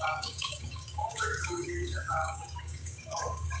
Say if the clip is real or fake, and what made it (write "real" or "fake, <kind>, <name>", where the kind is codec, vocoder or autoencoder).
fake, codec, DAC